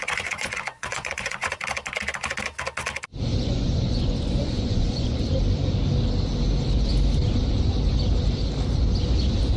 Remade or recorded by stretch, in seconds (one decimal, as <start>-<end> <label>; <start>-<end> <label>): 0.0-1.6 remade; 1.6-3.3 recorded; 3.3-5.2 remade; 5.2-9.6 recorded